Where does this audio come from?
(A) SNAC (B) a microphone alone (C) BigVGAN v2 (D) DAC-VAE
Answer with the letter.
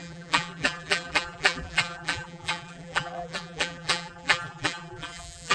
C